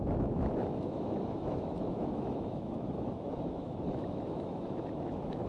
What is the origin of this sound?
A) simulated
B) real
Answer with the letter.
A